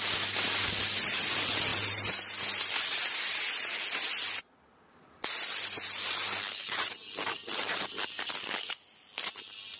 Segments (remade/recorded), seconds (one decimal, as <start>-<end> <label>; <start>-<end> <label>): 0.0-1.7 recorded; 1.7-2.4 remade; 2.4-9.8 recorded